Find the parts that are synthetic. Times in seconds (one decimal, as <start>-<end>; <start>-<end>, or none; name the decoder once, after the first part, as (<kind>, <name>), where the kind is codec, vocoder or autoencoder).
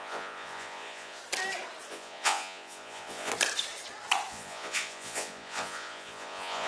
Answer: 0.0-1.2 (vocoder, Vocos); 1.9-3.3; 4.3-6.7